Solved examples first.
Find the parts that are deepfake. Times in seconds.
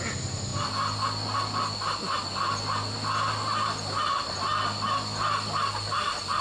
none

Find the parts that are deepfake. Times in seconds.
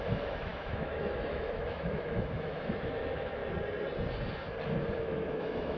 0.0-3.4; 5.0-5.8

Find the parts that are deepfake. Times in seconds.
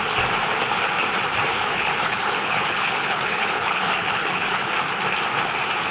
1.5-4.7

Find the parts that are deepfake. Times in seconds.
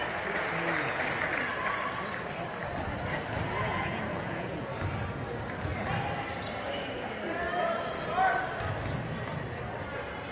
3.6-4.7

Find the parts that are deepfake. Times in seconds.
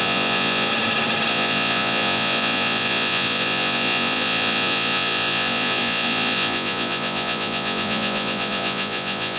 0.0-0.7; 1.3-9.4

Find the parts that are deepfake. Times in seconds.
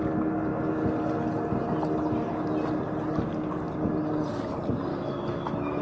4.9-5.8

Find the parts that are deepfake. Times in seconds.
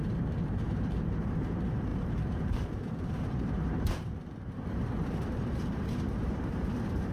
0.0-7.1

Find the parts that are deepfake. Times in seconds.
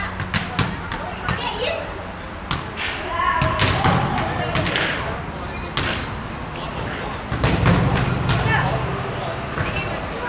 none